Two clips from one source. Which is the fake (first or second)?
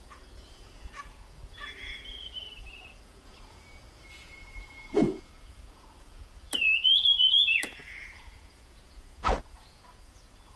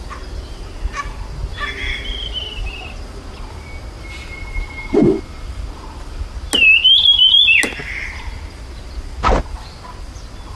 first